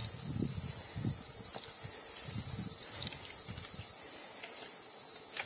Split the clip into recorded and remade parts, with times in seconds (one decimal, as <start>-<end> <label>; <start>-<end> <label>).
0.0-5.5 recorded